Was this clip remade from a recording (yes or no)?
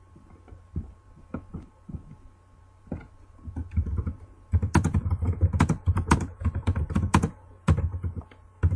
yes